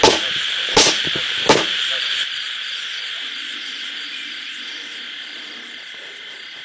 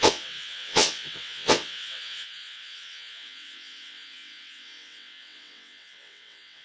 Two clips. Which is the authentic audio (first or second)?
first